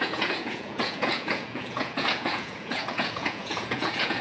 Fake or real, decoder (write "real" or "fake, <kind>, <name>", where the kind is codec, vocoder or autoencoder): fake, vocoder, Vocos